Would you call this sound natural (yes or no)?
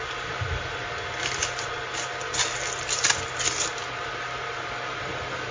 yes